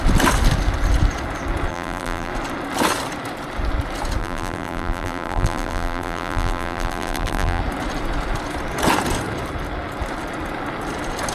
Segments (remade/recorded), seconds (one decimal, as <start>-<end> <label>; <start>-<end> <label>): 0.0-1.7 recorded; 1.7-2.3 remade; 2.3-4.2 recorded; 4.2-7.6 remade; 7.6-11.3 recorded